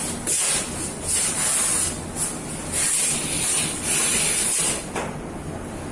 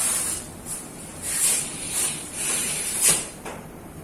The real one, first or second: first